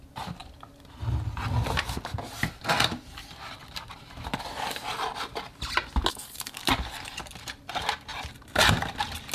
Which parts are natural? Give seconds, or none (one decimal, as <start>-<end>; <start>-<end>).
0.0-6.1; 6.6-9.3

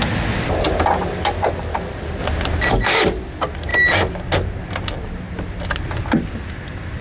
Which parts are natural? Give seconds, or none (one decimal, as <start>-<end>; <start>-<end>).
0.0-7.0

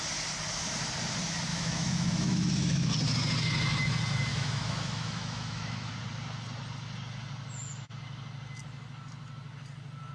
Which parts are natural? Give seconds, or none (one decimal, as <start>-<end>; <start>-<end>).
0.0-1.5; 2.9-4.3; 5.9-10.1